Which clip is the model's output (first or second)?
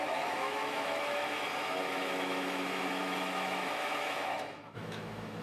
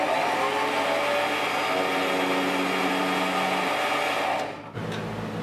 first